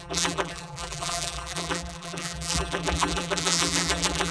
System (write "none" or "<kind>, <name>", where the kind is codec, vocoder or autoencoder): vocoder, BigVGAN v2